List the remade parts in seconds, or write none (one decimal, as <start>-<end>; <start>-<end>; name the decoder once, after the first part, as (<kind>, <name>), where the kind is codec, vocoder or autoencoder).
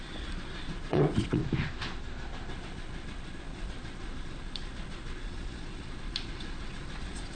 0.0-1.4 (vocoder, Vocos); 2.5-7.3